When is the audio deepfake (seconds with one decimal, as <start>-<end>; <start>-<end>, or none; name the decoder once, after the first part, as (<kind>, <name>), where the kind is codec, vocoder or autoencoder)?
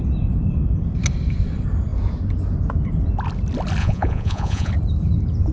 3.8-4.7 (vocoder, Vocos)